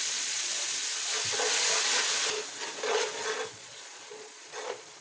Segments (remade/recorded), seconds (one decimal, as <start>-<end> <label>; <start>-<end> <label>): 0.0-0.5 remade; 0.5-3.5 recorded; 3.5-5.0 remade